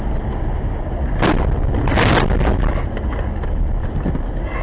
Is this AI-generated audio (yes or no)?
no